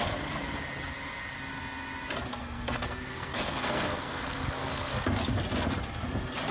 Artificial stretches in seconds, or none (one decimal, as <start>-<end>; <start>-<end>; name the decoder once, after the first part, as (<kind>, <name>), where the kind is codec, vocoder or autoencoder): 2.4-4.9 (codec, SNAC)